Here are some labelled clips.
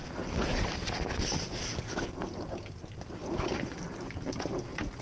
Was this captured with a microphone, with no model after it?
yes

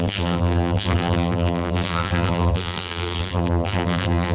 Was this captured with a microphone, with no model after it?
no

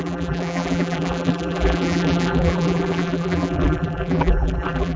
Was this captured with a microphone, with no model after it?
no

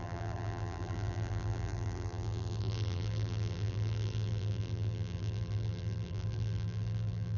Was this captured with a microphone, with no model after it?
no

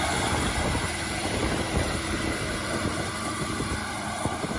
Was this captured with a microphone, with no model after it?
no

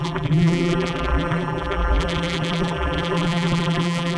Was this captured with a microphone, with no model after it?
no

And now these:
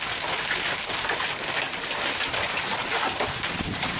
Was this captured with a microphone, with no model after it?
yes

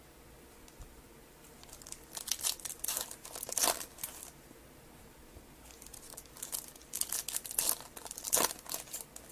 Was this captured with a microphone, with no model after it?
yes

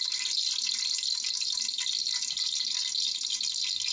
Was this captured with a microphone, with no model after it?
yes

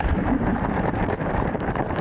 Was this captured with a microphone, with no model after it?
no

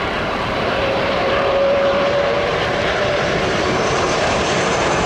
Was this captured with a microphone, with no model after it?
no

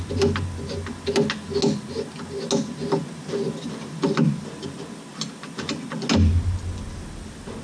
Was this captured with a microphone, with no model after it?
yes